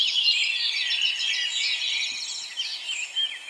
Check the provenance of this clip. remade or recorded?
recorded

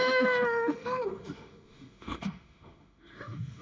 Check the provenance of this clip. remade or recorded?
remade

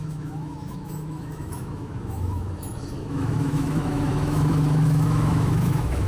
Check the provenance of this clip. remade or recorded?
remade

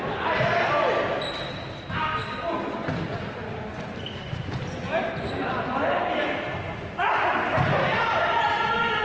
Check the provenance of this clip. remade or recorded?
recorded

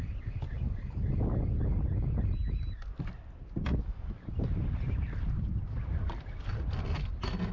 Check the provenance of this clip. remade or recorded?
recorded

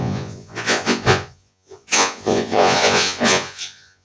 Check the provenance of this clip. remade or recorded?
remade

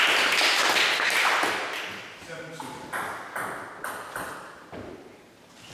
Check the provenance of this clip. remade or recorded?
recorded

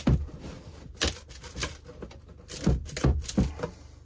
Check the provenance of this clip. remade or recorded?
recorded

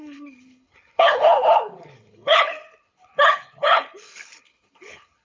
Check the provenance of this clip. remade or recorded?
remade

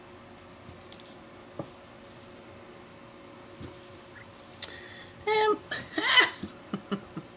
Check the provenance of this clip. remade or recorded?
recorded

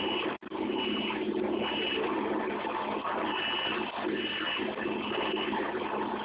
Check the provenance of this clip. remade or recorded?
recorded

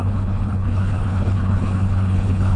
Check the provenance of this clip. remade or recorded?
remade